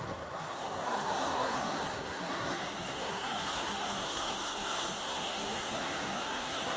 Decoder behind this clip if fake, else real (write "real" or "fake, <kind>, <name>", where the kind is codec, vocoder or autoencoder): fake, codec, SNAC